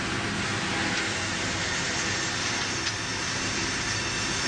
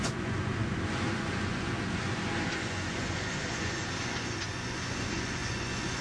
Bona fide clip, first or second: first